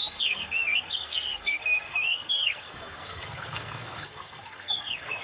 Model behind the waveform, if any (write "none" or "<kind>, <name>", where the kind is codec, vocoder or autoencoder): codec, SNAC